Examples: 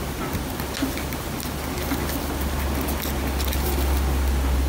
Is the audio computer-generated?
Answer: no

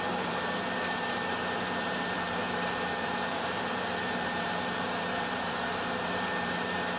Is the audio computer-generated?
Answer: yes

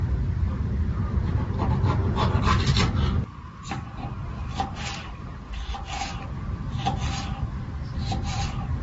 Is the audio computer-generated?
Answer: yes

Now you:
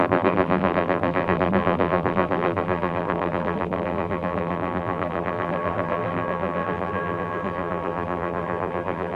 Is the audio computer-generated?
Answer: yes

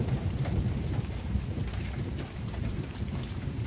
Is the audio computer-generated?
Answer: yes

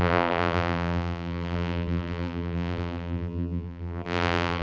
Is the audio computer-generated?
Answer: yes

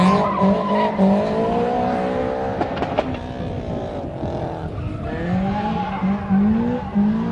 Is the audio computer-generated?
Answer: no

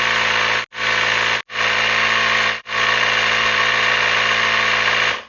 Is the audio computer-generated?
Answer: no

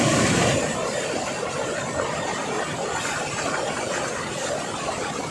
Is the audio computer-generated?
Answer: yes